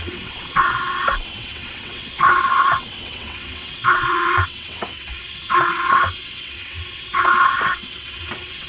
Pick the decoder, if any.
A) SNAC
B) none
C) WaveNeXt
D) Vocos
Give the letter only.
C